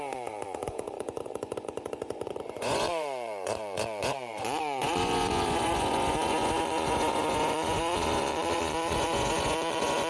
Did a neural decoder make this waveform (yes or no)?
yes